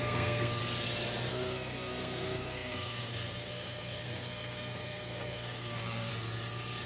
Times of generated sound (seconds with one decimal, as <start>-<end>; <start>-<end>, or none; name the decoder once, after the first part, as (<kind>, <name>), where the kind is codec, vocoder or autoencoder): 0.0-0.6 (codec, SNAC); 1.3-6.1